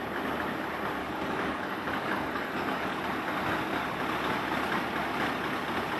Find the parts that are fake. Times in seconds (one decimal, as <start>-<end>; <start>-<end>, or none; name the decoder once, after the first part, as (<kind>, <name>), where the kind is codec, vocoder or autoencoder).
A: 1.0-3.0 (codec, DAC)